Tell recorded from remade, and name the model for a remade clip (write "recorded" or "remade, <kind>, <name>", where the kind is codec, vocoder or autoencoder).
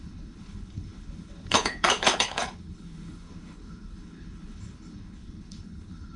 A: remade, codec, HILCodec